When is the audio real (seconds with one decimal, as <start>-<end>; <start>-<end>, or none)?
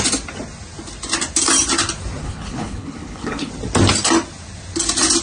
0.0-2.2; 3.5-5.2